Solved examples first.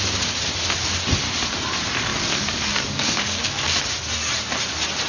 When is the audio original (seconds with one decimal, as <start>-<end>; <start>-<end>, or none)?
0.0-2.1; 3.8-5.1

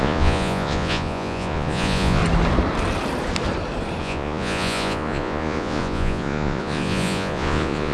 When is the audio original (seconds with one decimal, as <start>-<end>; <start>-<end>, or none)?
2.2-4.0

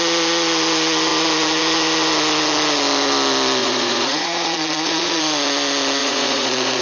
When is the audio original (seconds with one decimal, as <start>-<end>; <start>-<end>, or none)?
0.0-3.6; 5.2-6.0

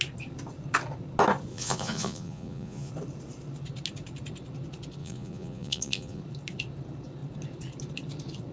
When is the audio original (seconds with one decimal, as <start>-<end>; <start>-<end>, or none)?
0.0-1.5; 2.9-5.0; 6.2-8.5

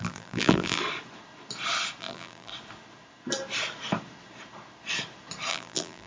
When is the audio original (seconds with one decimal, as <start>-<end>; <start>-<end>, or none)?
0.8-2.0; 2.5-5.5